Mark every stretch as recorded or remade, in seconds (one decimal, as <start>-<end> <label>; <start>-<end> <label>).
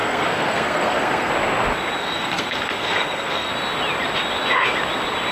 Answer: 0.0-1.3 remade; 1.3-2.0 recorded; 2.0-3.5 remade; 3.5-5.3 recorded